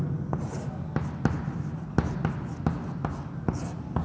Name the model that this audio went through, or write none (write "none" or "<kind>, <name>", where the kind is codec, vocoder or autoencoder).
none